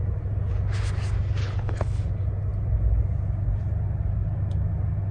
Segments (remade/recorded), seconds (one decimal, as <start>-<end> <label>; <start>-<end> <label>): 0.0-1.4 recorded; 1.4-2.0 remade; 2.0-5.1 recorded